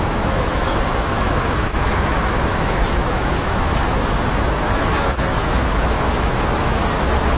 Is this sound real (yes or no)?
no